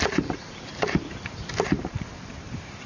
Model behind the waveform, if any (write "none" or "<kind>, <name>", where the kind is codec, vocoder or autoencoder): vocoder, BigVGAN v2